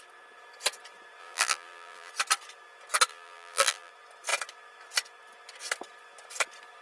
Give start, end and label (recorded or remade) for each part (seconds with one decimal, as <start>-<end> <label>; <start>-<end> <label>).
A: 0.0-1.2 recorded; 1.2-2.1 remade; 2.1-3.1 recorded; 3.1-3.9 remade; 3.9-6.8 recorded